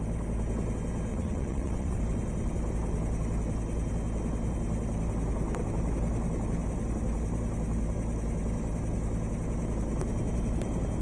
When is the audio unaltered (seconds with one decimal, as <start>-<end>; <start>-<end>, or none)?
0.0-1.1; 2.0-11.0